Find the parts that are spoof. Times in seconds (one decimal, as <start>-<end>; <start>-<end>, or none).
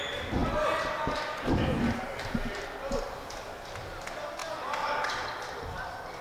none